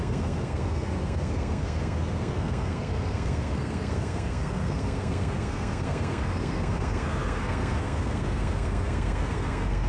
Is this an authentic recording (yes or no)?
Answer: no